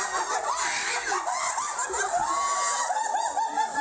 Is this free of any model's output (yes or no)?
yes